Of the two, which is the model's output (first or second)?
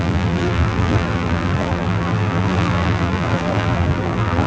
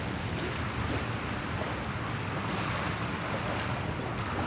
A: first